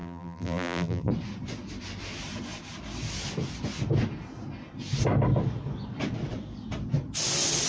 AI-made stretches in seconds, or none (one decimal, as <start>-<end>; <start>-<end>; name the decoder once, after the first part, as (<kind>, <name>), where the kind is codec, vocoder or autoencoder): 0.0-1.1 (vocoder, BigVGAN v2)

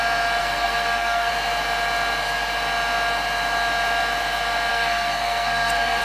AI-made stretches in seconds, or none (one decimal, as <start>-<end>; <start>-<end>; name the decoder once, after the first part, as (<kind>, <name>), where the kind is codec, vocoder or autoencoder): 0.4-1.3 (codec, SNAC); 4.7-6.0